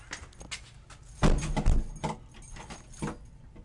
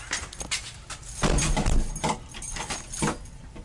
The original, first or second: first